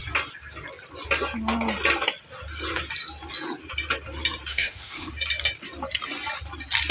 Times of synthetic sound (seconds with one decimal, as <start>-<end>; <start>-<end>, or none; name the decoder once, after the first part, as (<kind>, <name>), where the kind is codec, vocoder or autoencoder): 4.5-5.1 (autoencoder, DAC-VAE)